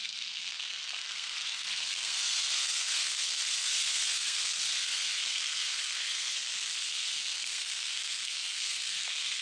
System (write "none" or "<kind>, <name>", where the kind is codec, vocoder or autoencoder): codec, SNAC